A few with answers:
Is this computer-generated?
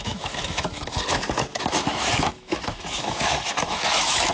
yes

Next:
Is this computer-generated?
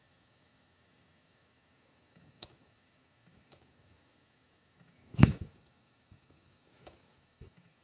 yes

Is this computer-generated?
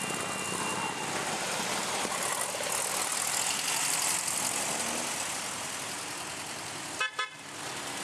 no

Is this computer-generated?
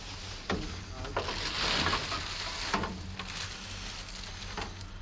no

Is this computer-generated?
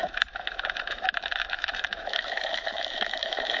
yes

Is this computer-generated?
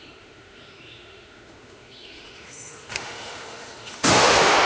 yes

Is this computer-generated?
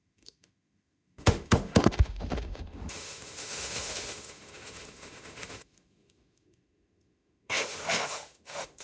yes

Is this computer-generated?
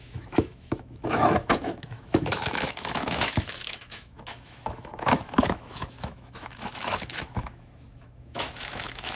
yes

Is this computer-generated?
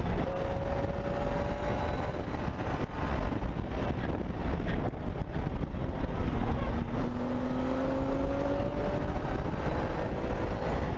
no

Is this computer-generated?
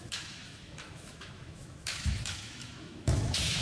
yes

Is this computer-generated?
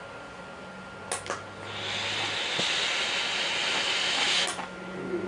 no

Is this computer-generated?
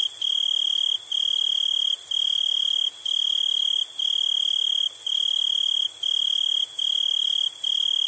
no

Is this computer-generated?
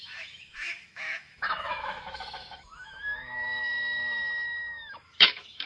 yes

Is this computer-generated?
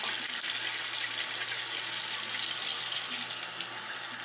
no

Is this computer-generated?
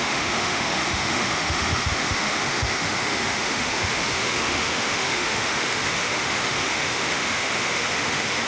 yes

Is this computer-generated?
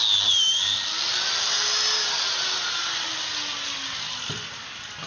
no